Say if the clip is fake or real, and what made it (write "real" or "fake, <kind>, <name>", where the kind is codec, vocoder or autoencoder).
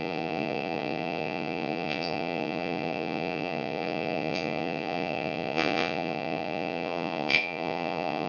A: fake, vocoder, Vocos